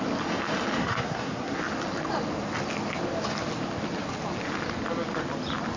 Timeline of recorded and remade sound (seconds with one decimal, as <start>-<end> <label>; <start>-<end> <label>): 0.0-0.8 recorded; 0.8-1.6 remade; 1.6-5.8 recorded